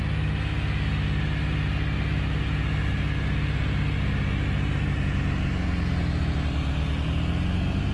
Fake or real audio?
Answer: real